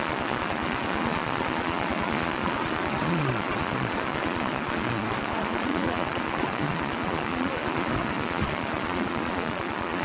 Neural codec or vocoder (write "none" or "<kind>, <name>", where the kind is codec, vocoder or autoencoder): vocoder, Vocos